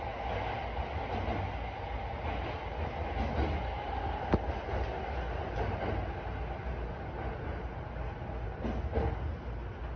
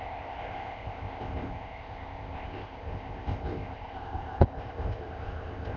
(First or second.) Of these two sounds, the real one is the first